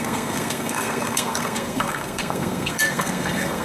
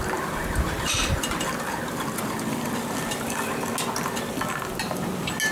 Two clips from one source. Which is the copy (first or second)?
first